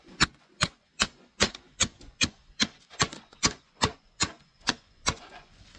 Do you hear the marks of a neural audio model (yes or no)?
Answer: yes